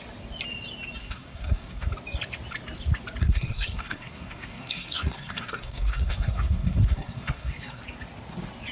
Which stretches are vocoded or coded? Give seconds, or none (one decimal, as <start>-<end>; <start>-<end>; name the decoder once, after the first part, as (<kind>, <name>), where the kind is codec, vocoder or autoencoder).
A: 1.0-1.9 (codec, SNAC); 3.2-7.8